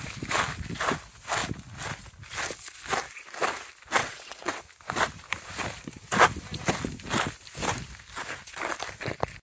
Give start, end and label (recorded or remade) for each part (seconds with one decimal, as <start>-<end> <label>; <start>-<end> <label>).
0.0-4.0 recorded; 4.0-4.6 remade; 4.6-9.4 recorded